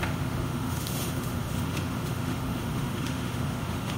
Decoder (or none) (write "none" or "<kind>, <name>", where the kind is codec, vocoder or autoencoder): autoencoder, DAC-VAE